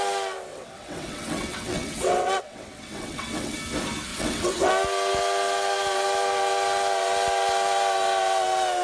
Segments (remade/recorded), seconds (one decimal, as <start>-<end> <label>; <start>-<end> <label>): 0.0-0.5 recorded; 0.5-3.6 remade; 3.6-4.1 recorded; 4.1-4.7 remade; 4.7-8.8 recorded